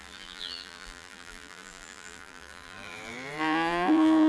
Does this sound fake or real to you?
fake